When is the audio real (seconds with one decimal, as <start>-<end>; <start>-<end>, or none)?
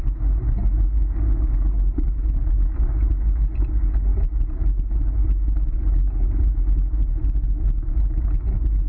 0.0-8.9